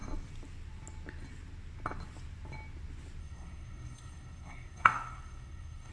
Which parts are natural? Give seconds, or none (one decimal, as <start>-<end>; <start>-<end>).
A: 0.0-3.2